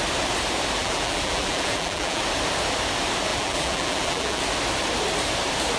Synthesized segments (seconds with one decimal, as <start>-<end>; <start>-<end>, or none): 0.8-2.2; 3.3-4.4